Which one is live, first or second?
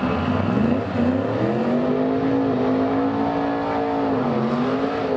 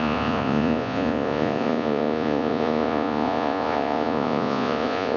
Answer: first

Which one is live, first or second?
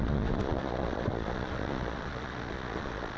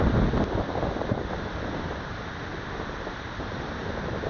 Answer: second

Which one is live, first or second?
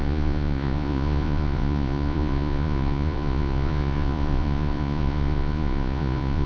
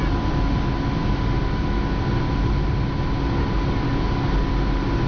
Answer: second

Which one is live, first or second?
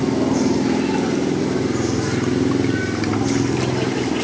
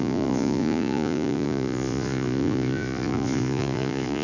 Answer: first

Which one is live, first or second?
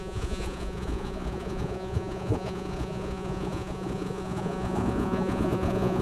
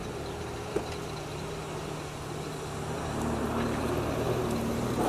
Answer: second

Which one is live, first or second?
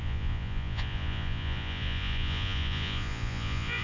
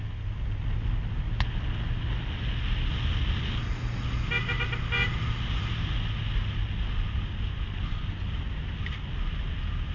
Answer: second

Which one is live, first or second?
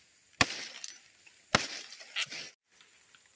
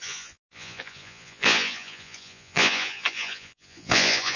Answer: first